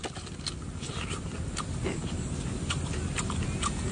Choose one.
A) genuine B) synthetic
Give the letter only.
A